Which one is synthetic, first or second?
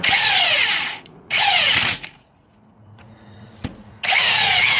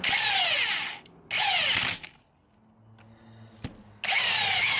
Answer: first